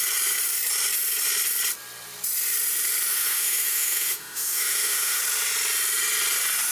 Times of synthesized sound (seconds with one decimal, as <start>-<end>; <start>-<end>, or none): 3.1-5.2